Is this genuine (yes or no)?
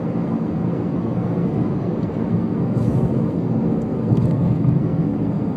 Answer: no